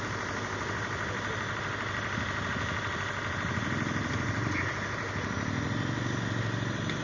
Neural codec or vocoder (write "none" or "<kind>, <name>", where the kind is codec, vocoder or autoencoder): none